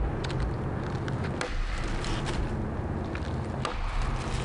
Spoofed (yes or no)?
no